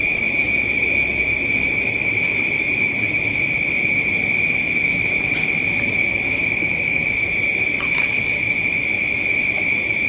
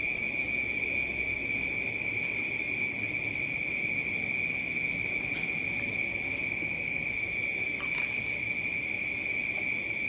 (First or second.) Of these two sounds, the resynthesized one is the first